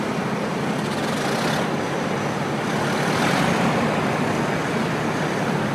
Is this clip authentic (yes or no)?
yes